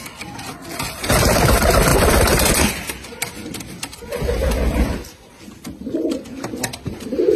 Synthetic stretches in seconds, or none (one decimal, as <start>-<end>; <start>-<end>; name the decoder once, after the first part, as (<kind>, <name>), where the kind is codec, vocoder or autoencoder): 1.9-2.5 (vocoder, BigVGAN v2)